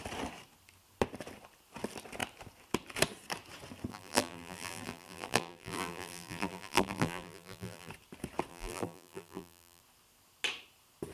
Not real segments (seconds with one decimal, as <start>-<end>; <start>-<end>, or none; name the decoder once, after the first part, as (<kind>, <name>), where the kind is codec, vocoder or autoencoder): 3.9-7.9 (vocoder, BigVGAN v2); 8.5-9.8